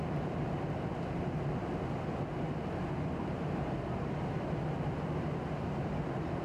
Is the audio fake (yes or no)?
no